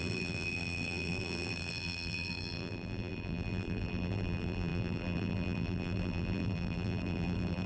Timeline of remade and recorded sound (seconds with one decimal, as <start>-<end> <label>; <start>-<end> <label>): 0.0-7.7 remade